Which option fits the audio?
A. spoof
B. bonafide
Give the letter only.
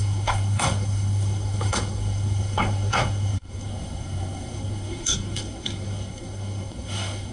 A